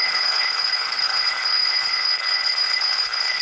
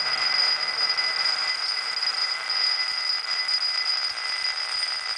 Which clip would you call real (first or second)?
second